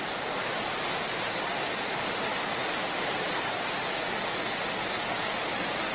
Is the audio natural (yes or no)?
yes